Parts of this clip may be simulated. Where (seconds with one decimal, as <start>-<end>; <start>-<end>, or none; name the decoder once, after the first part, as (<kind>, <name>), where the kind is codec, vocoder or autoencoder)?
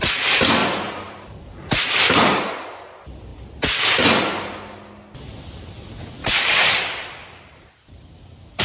0.6-2.4 (vocoder, BigVGAN v2); 6.2-8.6